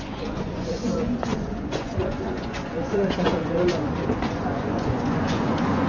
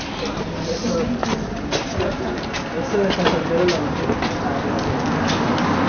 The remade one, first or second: first